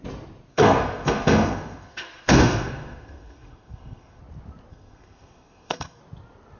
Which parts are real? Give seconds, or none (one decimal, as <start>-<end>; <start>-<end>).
0.0-0.5; 4.2-4.7; 6.0-6.6